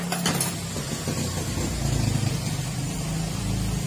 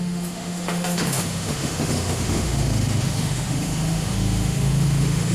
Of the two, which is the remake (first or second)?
second